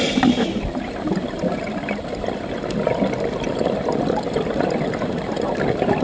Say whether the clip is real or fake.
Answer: real